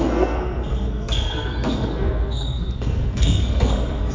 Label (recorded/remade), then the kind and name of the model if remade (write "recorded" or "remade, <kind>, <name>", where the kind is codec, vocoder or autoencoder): remade, codec, SNAC